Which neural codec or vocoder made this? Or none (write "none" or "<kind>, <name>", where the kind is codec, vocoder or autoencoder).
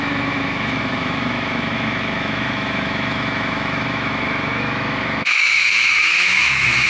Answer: autoencoder, DAC-VAE